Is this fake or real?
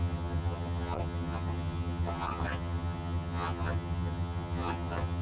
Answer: fake